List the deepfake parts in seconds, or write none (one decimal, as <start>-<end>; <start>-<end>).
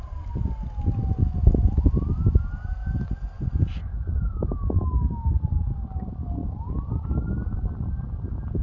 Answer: 3.8-4.5